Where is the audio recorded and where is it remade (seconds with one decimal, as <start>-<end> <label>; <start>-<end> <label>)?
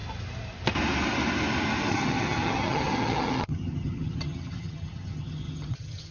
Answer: 0.0-1.9 recorded; 1.9-6.1 remade